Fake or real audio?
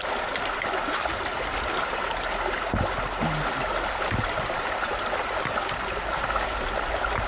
real